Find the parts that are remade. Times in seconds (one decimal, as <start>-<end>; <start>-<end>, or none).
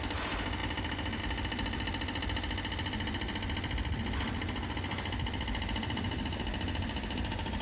none